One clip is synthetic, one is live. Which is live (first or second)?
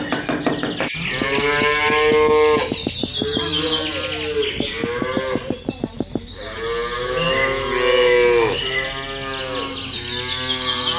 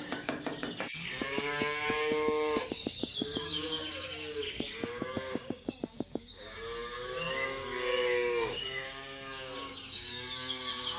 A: first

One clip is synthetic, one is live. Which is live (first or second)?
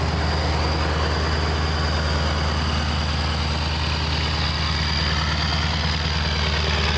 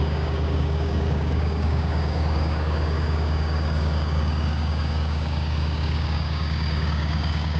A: first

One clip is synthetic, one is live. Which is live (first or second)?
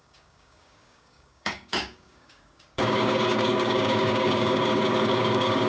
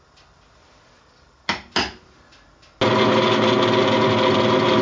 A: second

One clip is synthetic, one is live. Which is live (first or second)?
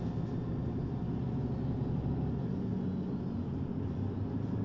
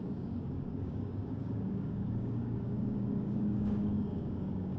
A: first